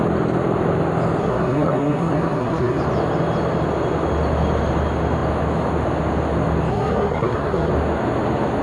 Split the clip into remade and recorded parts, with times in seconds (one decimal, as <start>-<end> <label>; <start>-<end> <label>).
0.0-1.2 recorded; 1.2-2.8 remade; 2.8-6.7 recorded; 6.7-7.7 remade; 7.7-8.6 recorded